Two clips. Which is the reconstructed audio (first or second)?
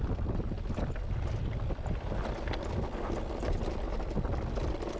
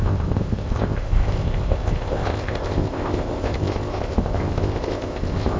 second